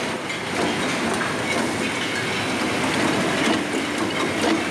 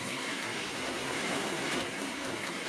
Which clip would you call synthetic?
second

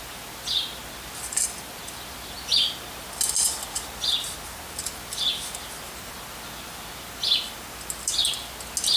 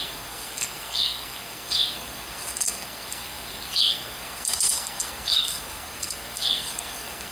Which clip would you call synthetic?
second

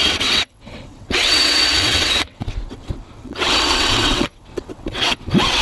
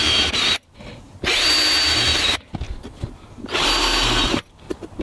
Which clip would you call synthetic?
first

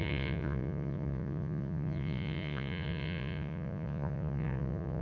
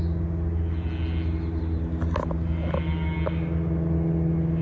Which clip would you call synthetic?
first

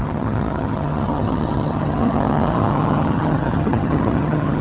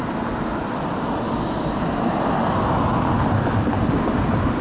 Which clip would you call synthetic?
first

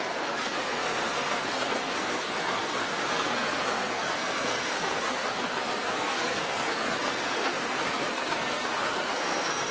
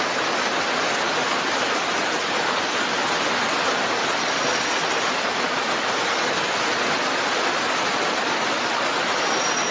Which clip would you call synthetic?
first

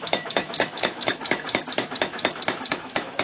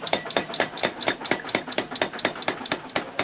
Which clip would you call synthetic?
first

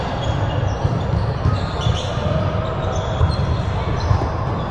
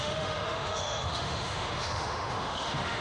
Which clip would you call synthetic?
second